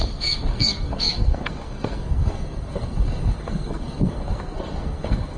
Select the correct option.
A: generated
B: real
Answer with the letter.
A